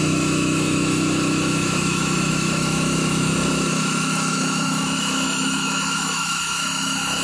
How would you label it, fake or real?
fake